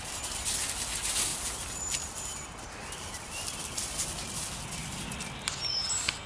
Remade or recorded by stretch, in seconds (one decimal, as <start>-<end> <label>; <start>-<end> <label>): 0.0-1.3 recorded; 1.3-4.0 remade; 4.0-4.8 recorded; 4.8-5.7 remade; 5.7-6.3 recorded